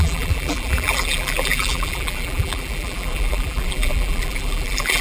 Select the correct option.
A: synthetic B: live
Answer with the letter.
A